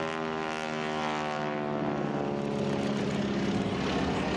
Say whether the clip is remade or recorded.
recorded